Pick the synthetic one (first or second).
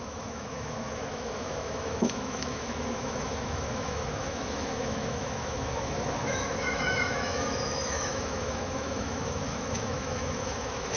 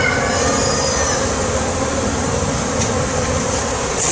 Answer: first